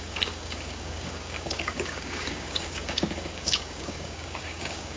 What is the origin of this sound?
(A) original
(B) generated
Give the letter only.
B